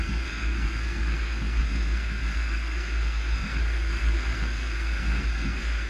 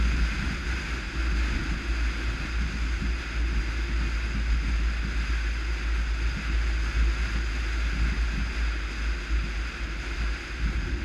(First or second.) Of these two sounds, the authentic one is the second